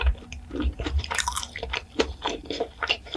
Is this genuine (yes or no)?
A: no